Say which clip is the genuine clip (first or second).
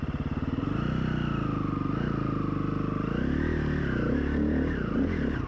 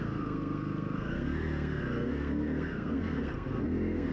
first